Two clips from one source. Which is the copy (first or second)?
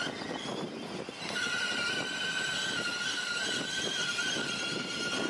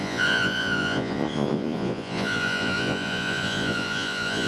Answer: second